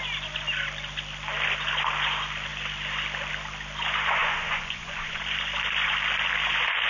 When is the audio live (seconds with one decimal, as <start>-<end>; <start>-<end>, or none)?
0.0-4.2; 5.2-6.9